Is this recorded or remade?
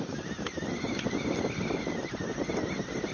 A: recorded